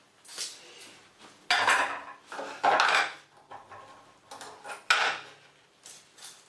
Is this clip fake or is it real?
real